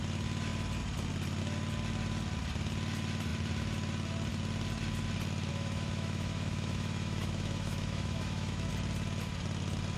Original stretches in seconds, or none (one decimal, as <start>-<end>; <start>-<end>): 0.0-5.5; 8.7-10.0